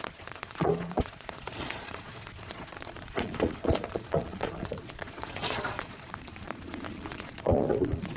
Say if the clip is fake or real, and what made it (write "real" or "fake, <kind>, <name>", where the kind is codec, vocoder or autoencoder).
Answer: fake, vocoder, Vocos